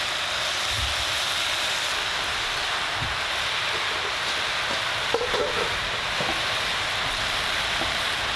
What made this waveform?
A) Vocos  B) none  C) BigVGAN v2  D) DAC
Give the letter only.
B